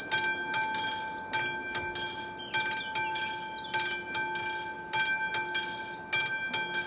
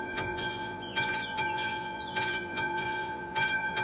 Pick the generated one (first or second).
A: second